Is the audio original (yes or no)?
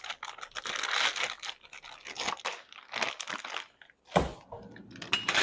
yes